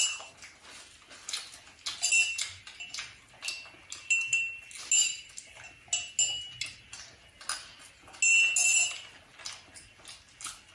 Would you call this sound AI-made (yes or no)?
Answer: no